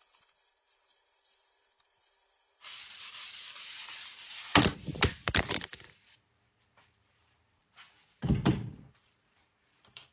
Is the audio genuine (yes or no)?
no